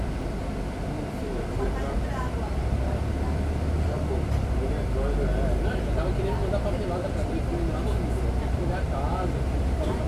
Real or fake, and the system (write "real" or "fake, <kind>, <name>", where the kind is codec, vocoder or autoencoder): real